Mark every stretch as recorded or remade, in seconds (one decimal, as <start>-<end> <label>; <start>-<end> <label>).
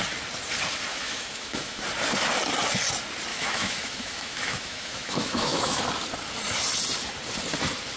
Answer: 0.0-0.9 recorded; 0.9-1.8 remade; 1.8-3.3 recorded; 3.3-5.8 remade; 5.8-8.0 recorded